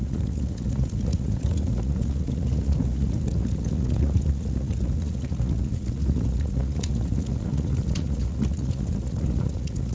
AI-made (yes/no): yes